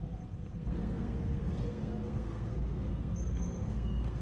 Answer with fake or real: fake